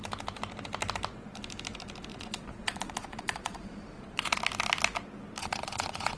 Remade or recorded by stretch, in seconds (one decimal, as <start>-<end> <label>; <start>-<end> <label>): 0.0-2.1 recorded; 2.1-4.4 remade; 4.4-5.4 recorded; 5.4-6.2 remade